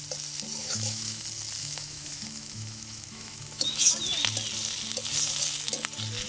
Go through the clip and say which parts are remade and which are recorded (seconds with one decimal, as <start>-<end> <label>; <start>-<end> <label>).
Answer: 0.0-0.6 recorded; 0.6-1.2 remade; 1.2-1.6 recorded; 1.6-3.9 remade; 3.9-6.3 recorded